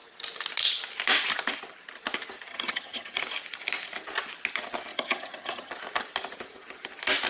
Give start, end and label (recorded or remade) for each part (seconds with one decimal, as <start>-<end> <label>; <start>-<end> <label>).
0.0-2.5 recorded; 2.5-3.2 remade; 3.2-4.9 recorded; 4.9-5.7 remade; 5.7-7.3 recorded